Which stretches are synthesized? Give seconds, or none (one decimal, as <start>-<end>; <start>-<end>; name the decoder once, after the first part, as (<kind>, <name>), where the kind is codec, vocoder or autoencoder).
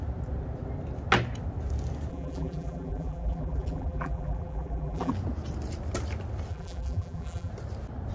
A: 2.1-5.1 (vocoder, BigVGAN v2); 6.5-7.5